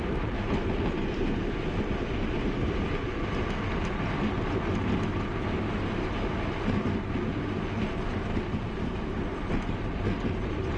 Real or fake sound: real